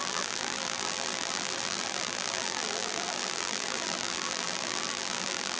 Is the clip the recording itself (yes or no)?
no